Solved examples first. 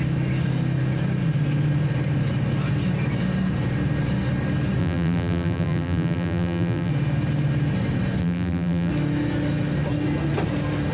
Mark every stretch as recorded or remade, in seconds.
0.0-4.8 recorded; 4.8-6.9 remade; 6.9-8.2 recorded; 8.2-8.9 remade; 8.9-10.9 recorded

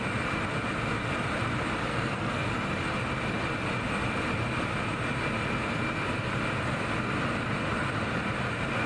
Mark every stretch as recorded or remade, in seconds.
0.0-1.9 recorded; 1.9-2.4 remade; 2.4-8.9 recorded

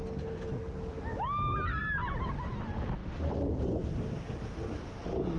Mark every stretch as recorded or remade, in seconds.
0.0-1.8 recorded; 1.8-2.6 remade; 2.6-3.0 recorded; 3.0-4.8 remade; 4.8-5.4 recorded

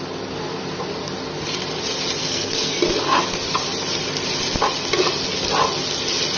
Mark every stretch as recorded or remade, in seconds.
0.0-2.2 recorded; 2.2-2.8 remade; 2.8-6.4 recorded

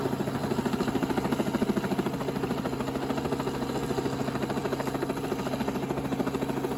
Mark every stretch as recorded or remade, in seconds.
0.0-6.8 recorded

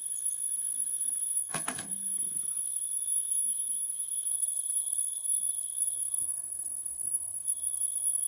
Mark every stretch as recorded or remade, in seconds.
0.0-1.4 recorded; 1.4-1.9 remade; 1.9-4.3 recorded; 4.3-8.3 remade

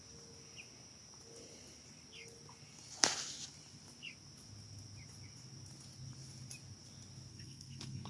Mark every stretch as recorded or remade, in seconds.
0.0-7.3 recorded; 7.3-8.1 remade

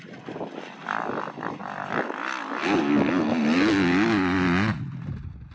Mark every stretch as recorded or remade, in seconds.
0.0-5.5 recorded